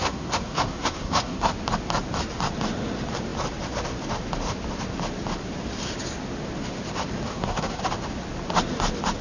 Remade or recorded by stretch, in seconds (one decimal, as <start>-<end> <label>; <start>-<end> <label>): 0.0-1.5 remade; 1.5-7.3 recorded; 7.3-7.8 remade; 7.8-9.2 recorded